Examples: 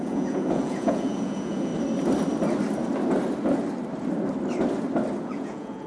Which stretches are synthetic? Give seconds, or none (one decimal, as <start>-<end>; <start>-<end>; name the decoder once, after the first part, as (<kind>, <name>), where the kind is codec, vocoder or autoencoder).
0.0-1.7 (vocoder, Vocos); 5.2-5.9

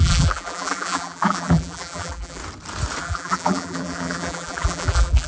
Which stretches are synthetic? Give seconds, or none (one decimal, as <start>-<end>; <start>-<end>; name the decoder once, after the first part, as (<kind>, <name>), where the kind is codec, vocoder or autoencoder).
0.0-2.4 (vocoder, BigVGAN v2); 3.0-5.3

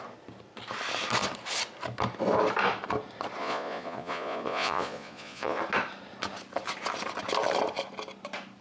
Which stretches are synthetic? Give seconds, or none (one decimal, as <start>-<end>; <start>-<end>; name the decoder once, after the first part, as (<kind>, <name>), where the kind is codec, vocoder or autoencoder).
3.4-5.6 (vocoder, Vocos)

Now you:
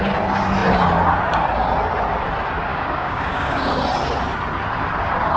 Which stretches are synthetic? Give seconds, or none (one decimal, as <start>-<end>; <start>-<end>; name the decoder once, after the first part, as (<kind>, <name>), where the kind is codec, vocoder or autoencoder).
2.7-3.7 (codec, DAC)

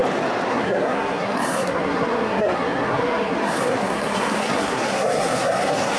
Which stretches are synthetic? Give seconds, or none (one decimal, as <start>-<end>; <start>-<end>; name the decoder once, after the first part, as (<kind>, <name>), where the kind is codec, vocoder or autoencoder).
0.5-6.0 (codec, SNAC)